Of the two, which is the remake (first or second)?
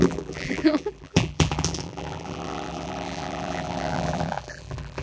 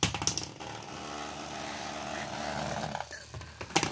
first